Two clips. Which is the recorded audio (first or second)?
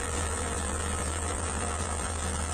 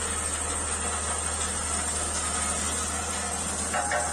second